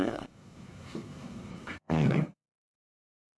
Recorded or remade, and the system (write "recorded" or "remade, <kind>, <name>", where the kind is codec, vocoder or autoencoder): remade, codec, SNAC